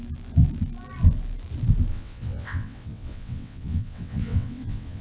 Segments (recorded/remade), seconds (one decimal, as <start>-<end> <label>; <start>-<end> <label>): 0.0-1.9 recorded; 1.9-5.0 remade